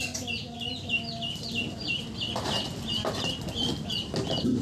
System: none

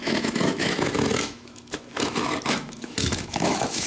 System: autoencoder, DAC-VAE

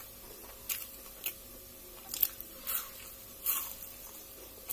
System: none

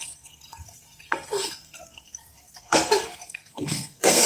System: codec, SNAC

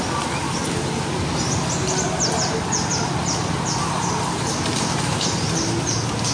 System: none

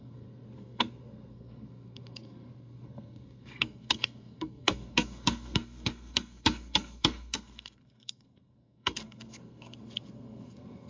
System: codec, SNAC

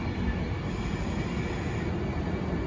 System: none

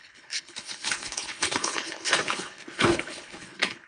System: codec, HILCodec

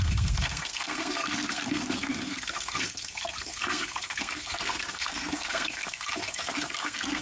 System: codec, SNAC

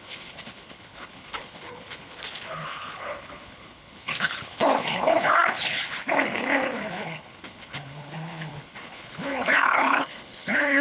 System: codec, HILCodec